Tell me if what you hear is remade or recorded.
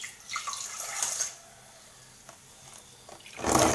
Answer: recorded